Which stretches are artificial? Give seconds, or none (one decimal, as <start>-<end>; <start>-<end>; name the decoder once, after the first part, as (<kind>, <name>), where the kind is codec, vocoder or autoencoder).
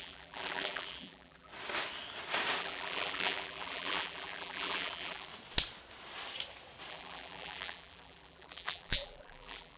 0.0-1.5 (vocoder, BigVGAN v2); 2.6-5.3; 6.9-9.8